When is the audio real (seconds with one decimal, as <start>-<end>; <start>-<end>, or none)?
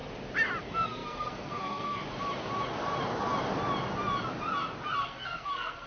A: 0.0-0.6; 2.0-5.0